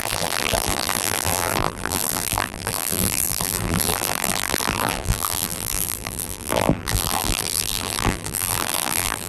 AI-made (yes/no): yes